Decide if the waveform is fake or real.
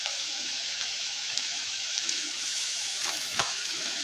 fake